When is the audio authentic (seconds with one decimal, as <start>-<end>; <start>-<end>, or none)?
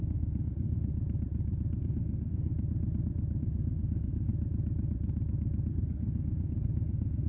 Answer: 0.9-1.8; 2.5-3.4; 4.3-5.7